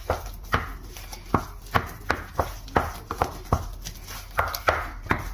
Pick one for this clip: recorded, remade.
recorded